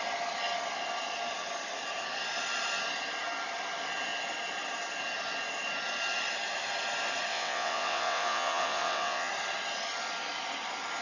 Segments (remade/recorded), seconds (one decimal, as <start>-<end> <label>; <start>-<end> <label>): 0.0-7.3 recorded; 7.3-9.3 remade; 9.3-11.0 recorded